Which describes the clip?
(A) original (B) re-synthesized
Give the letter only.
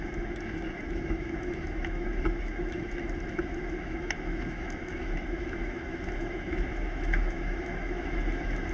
B